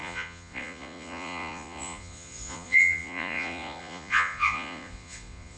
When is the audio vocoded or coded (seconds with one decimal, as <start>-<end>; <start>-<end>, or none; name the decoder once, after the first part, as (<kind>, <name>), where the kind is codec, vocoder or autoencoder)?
0.0-5.6 (vocoder, Vocos)